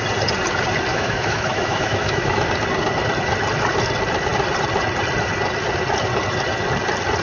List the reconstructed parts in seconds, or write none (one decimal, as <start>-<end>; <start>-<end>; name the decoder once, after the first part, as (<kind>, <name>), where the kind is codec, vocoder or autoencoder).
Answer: 0.9-2.5 (autoencoder, DAC-VAE)